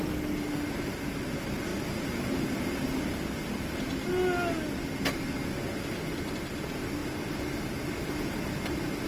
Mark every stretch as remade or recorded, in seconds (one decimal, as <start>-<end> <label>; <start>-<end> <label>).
0.0-9.1 recorded